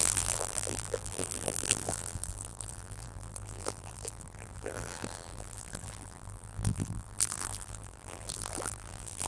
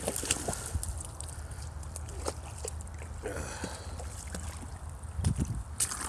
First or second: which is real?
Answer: second